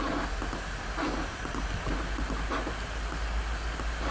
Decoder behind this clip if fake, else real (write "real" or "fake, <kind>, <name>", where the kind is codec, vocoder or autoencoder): real